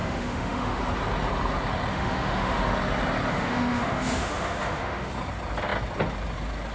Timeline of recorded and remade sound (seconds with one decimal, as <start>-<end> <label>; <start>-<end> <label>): 0.0-0.8 remade; 0.8-1.9 recorded; 1.9-2.6 remade; 2.6-3.3 recorded; 3.3-5.1 remade; 5.1-6.7 recorded